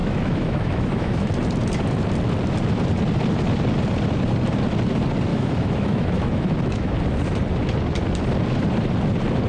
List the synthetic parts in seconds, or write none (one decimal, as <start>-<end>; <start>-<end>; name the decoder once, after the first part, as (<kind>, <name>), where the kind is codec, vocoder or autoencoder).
0.0-1.3 (autoencoder, DAC-VAE); 5.3-6.9